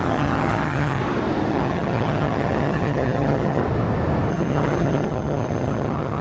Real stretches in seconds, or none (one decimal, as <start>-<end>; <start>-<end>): 1.0-1.5; 3.6-4.3